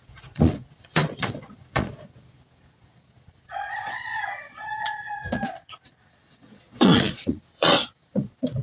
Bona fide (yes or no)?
no